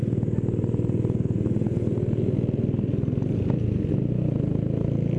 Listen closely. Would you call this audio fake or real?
real